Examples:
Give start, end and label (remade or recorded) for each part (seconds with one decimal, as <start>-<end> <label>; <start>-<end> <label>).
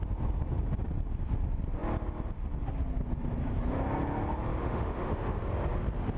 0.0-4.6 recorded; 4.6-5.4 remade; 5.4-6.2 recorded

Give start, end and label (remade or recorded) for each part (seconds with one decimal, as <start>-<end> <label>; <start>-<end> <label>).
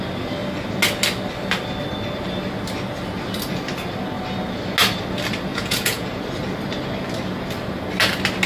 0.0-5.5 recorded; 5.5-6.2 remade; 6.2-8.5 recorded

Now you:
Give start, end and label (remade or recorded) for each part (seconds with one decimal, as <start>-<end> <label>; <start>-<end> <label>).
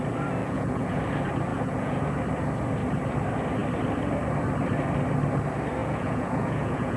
0.0-0.4 recorded; 0.4-1.0 remade; 1.0-1.5 recorded; 1.5-2.0 remade; 2.0-5.8 recorded; 5.8-7.0 remade